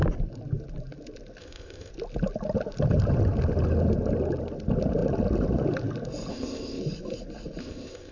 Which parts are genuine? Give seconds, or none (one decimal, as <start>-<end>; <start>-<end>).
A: 0.0-1.4; 1.9-6.3; 6.8-7.6